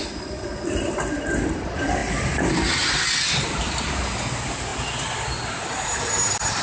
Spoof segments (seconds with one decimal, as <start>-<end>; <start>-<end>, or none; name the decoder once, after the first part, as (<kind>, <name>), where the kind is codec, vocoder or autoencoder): none